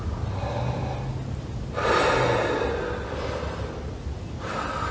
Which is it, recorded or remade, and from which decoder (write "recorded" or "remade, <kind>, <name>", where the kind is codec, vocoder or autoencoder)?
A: recorded